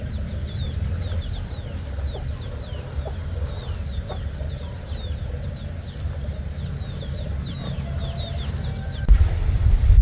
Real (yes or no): yes